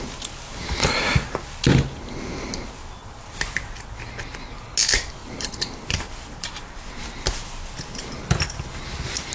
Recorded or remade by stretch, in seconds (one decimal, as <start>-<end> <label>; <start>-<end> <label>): 0.0-5.2 recorded; 5.2-6.9 remade; 6.9-9.3 recorded